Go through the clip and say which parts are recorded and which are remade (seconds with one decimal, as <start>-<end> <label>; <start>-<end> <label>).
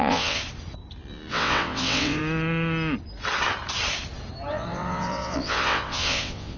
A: 0.0-0.4 remade; 0.4-1.3 recorded; 1.3-2.2 remade; 2.2-4.5 recorded; 4.5-6.6 remade